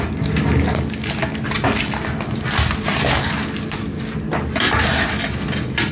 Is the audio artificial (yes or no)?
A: no